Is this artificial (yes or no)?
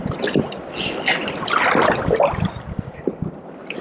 yes